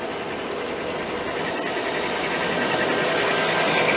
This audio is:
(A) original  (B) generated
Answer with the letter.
A